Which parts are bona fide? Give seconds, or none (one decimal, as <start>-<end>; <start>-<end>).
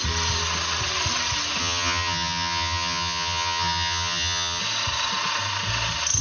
0.0-1.6; 4.6-6.2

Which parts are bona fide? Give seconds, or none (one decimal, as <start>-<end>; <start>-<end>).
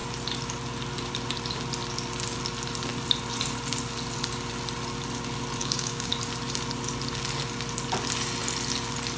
0.0-5.6; 6.1-9.2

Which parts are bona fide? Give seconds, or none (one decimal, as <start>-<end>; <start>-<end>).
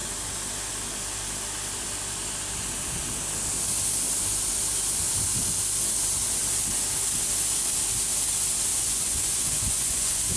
0.0-8.7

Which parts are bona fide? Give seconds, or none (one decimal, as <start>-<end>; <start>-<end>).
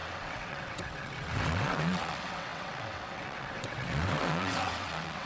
none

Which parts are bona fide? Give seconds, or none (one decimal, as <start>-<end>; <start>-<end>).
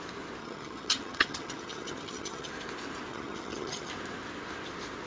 0.0-0.4; 2.5-3.1; 3.9-5.1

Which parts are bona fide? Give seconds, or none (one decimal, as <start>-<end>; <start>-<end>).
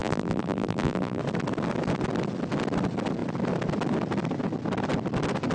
1.2-5.5